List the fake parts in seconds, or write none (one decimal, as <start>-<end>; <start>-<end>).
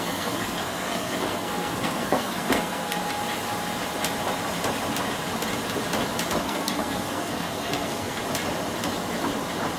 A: 0.0-3.0; 6.4-8.2